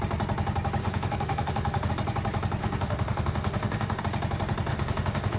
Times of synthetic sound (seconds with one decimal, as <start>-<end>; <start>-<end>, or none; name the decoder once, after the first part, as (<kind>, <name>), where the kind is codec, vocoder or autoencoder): 0.8-1.9 (autoencoder, DAC-VAE); 2.6-4.0; 4.7-5.4